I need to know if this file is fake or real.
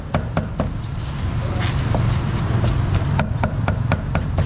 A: real